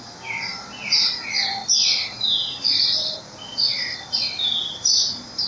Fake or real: real